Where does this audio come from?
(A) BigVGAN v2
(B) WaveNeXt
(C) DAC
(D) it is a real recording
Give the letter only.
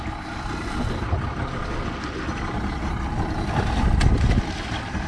D